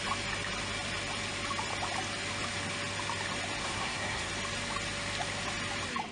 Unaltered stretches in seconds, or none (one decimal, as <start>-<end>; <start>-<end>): 0.0-3.6; 4.3-6.1